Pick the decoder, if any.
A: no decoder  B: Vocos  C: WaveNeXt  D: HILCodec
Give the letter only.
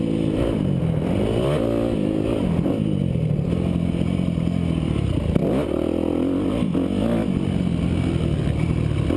A